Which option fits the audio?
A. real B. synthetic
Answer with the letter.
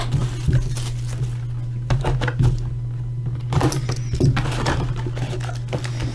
A